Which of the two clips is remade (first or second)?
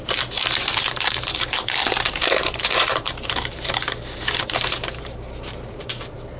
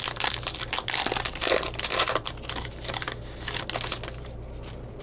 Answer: first